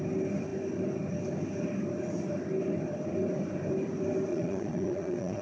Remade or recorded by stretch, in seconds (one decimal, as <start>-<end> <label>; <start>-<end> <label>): 0.0-4.3 recorded; 4.3-5.4 remade